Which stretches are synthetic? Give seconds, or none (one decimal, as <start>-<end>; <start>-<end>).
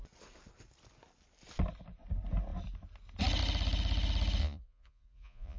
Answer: 4.4-5.6